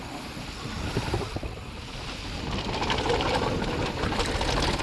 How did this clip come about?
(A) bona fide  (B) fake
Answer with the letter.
A